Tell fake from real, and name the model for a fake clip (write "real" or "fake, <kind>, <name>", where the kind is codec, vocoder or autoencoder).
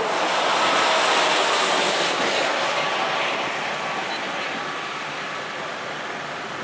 real